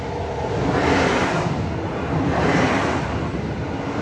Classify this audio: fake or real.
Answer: real